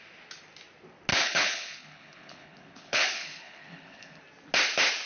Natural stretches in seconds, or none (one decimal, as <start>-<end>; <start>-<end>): 0.0-1.1; 4.2-5.1